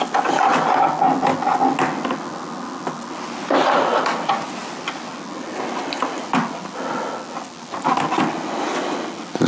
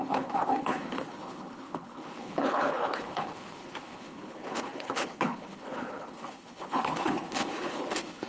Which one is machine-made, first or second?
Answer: second